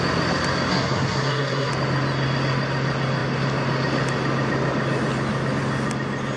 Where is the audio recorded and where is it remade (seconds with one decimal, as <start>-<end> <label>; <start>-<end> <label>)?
0.0-0.7 recorded; 0.7-1.7 remade; 1.7-6.4 recorded